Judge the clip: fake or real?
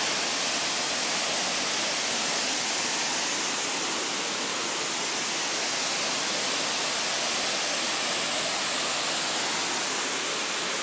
real